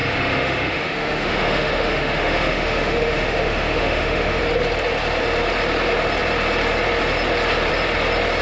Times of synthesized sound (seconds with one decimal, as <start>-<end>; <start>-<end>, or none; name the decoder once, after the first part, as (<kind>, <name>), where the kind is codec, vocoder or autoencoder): 0.0-4.4 (autoencoder, DAC-VAE)